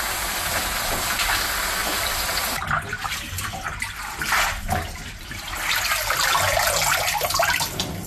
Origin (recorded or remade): remade